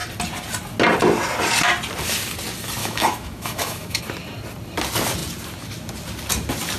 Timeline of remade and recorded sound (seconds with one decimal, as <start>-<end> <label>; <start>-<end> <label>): 0.0-2.8 recorded; 2.8-4.0 remade; 4.0-6.8 recorded